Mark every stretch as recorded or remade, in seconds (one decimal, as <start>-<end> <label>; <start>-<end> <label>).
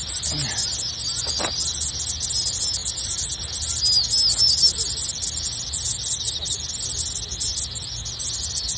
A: 0.0-8.8 recorded